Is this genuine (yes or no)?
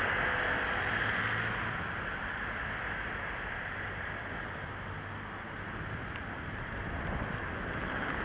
yes